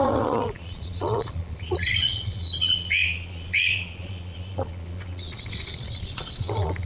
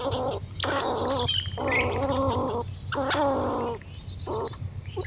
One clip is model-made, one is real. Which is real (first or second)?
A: second